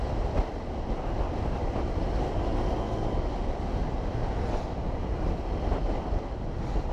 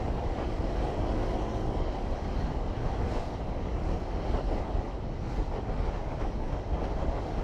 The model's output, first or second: second